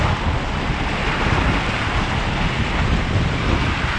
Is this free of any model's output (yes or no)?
yes